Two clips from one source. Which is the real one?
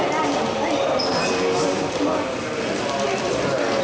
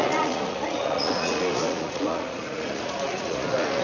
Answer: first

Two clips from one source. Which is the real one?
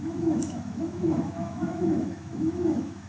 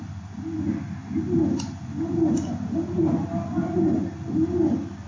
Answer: second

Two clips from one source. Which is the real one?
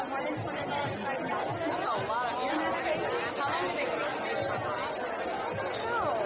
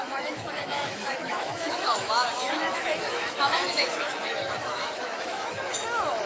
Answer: first